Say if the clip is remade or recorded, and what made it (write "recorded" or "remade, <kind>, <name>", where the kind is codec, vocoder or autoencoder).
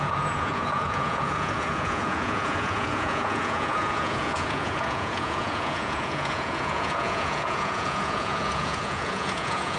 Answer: remade, vocoder, Vocos